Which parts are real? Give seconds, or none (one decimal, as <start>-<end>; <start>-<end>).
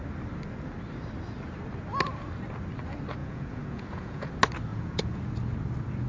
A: 0.0-3.2; 4.3-4.7; 5.2-6.1